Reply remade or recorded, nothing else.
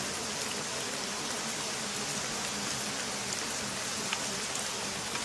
recorded